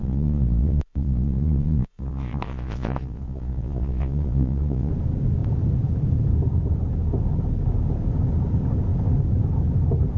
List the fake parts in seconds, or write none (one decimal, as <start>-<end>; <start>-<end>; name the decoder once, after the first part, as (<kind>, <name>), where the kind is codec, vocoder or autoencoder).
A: 0.0-4.9 (vocoder, Vocos)